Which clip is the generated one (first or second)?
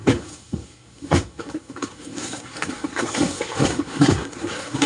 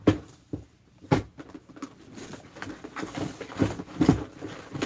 first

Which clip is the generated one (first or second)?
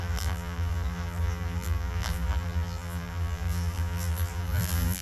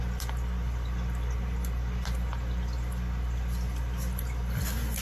first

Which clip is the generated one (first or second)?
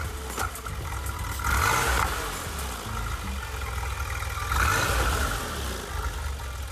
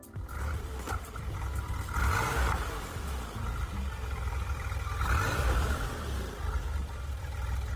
second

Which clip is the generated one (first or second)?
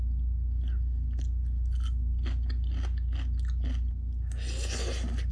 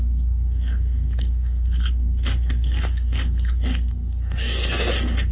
second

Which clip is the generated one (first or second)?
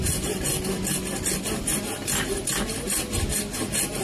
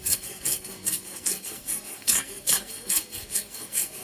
second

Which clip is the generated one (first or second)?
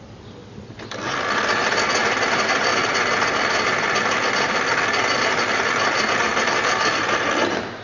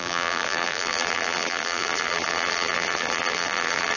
second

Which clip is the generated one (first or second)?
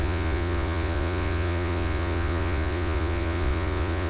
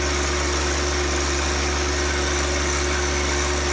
first